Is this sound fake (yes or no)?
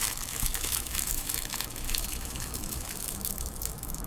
yes